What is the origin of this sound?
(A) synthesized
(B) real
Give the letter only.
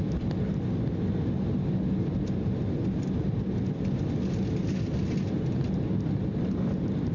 B